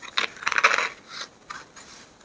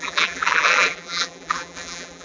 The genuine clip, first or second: first